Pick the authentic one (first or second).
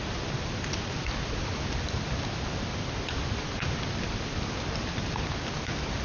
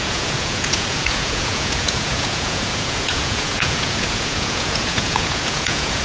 first